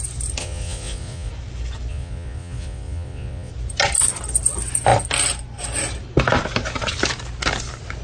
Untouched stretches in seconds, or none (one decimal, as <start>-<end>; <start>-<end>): 0.0-0.4; 1.3-1.9; 3.5-8.0